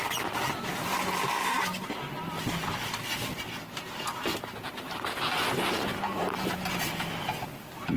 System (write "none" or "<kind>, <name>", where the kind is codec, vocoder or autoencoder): none